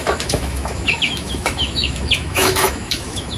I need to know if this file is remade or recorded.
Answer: remade